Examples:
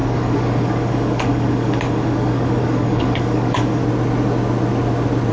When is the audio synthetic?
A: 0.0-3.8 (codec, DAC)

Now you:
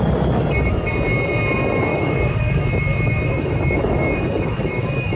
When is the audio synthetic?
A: 1.9-5.2 (autoencoder, DAC-VAE)

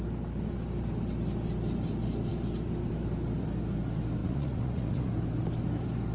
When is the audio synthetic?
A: 4.2-5.1 (vocoder, Vocos)

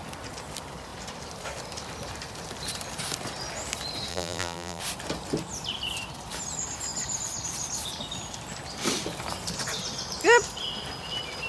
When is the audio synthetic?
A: 4.1-4.8 (vocoder, BigVGAN v2)

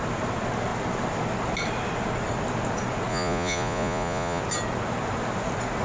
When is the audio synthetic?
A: 3.1-4.4 (vocoder, Vocos)

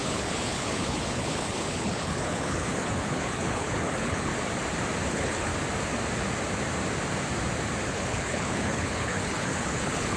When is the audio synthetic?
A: 0.0-4.3 (codec, HILCodec); 5.1-5.5; 7.9-10.2